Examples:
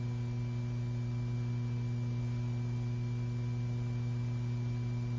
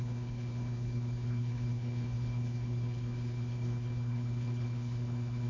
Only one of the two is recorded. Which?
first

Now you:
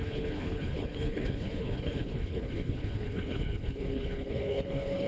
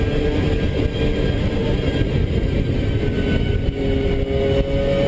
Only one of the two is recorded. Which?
second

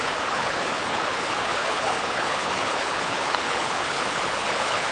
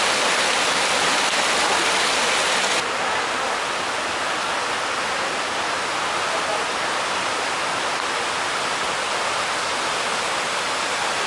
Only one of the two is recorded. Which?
second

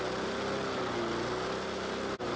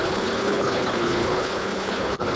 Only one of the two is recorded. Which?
first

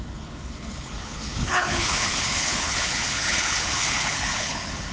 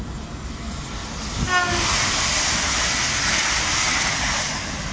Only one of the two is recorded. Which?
second